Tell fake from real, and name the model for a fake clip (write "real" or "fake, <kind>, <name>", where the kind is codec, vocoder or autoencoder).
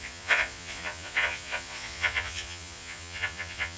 fake, vocoder, Vocos